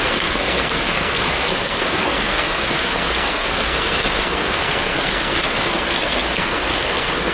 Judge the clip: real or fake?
fake